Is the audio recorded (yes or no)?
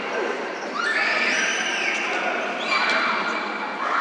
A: yes